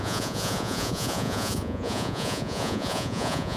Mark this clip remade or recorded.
remade